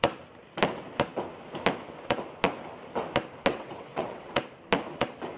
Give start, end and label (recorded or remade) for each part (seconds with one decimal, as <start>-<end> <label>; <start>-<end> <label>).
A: 0.0-3.5 recorded; 3.5-4.3 remade; 4.3-5.4 recorded